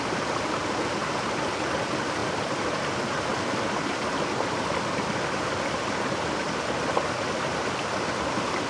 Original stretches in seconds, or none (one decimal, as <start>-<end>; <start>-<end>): 0.0-8.7